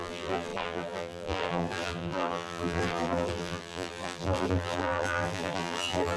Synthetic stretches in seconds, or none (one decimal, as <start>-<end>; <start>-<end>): 0.0-6.2